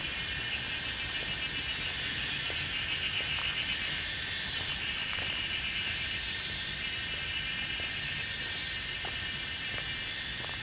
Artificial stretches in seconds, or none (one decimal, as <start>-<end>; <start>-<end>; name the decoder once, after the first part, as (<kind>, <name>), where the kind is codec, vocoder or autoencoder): 5.0-6.5 (vocoder, BigVGAN v2)